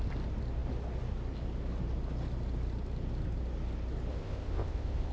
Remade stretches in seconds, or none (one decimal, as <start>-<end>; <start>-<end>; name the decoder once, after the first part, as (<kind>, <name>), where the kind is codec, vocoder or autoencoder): 4.1-5.1 (codec, ZipCodec)